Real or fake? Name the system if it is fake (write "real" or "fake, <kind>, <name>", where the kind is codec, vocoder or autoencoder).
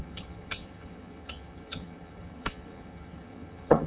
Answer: fake, vocoder, HiFi-GAN